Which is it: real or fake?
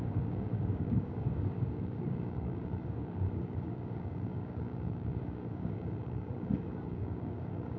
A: fake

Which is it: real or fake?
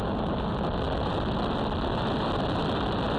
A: real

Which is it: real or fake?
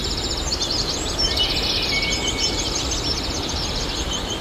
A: real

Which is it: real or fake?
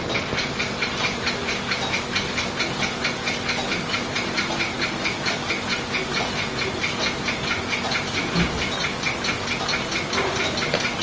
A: real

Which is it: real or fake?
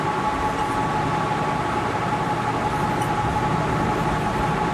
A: real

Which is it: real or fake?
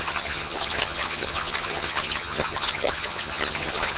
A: fake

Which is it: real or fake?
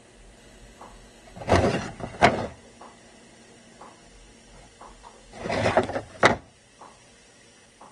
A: real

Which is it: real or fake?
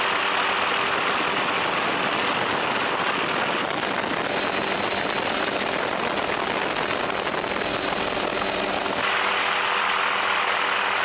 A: real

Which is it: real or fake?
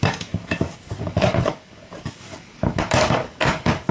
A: fake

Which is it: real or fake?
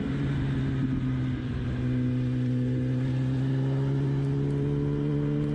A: real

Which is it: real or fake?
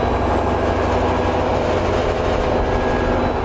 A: real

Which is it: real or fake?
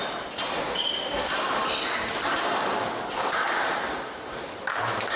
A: fake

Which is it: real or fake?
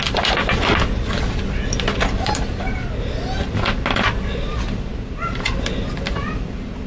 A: real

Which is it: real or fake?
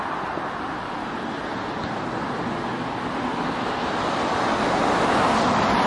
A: real